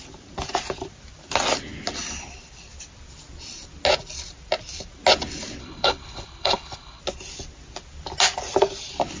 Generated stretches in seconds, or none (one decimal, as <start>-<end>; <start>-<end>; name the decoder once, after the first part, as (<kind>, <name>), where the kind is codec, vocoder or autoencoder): 5.6-7.0 (codec, HILCodec)